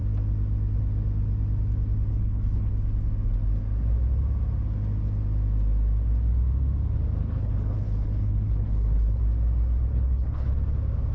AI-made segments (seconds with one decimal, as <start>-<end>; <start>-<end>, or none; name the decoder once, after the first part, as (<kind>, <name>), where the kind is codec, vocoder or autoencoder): 2.1-2.7 (codec, HILCodec); 7.2-9.2; 9.9-10.5